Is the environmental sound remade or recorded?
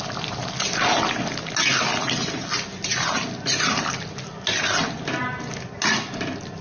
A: recorded